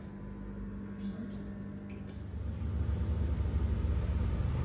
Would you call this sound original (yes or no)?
yes